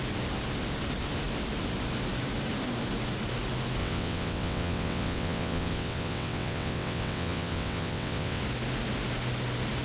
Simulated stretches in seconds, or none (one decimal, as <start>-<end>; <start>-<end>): 3.8-8.4